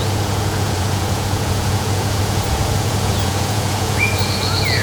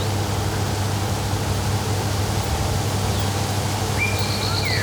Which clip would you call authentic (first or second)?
second